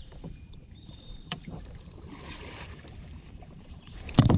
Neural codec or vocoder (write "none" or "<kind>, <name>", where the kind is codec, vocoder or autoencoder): vocoder, BigVGAN v2